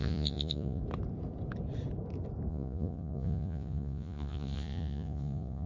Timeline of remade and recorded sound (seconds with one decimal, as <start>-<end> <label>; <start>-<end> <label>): 0.0-0.8 remade; 0.8-2.5 recorded; 2.5-5.7 remade